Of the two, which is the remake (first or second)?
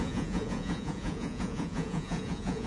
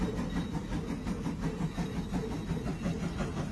first